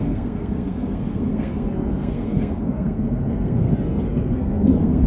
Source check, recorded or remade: remade